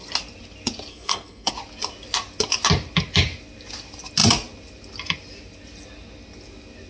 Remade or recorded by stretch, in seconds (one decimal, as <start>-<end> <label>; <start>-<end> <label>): 0.0-0.9 recorded; 0.9-1.5 remade; 1.5-6.9 recorded